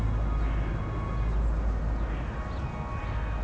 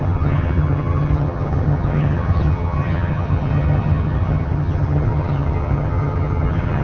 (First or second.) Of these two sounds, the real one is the first